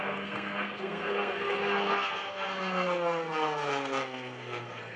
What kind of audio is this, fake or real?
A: fake